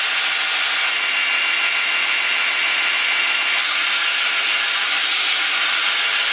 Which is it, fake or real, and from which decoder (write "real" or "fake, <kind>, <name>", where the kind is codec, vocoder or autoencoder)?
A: real